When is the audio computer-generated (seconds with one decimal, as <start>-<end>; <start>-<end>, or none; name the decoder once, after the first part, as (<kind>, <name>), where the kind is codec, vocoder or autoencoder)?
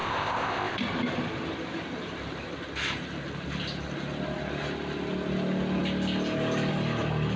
0.0-0.8 (codec, ZipCodec)